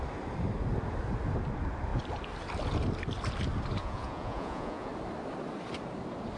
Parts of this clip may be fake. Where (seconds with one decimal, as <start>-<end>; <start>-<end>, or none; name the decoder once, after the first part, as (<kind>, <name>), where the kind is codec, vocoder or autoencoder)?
3.8-4.9 (vocoder, Vocos)